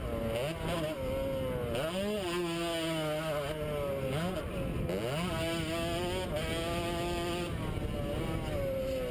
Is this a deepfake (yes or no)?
no